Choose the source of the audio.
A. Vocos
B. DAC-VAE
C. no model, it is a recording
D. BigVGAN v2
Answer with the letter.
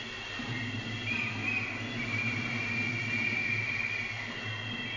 C